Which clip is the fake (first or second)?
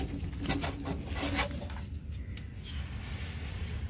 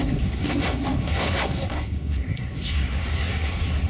second